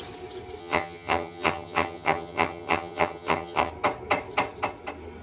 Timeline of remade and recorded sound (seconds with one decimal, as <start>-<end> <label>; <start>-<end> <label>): 0.0-0.6 recorded; 0.6-3.7 remade; 3.7-5.2 recorded